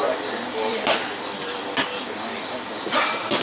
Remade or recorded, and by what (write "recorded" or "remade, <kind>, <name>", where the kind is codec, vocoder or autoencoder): recorded